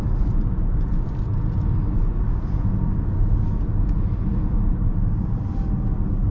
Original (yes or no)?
yes